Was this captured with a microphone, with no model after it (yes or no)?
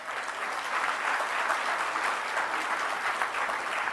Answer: yes